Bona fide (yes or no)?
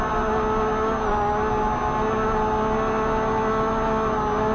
yes